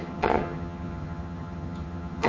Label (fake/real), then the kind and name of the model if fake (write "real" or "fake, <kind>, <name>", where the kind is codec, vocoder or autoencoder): fake, vocoder, HiFi-GAN